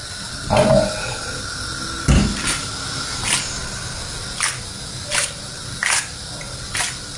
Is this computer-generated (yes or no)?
no